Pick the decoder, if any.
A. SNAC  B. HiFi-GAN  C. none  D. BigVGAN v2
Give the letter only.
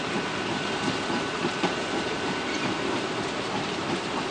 D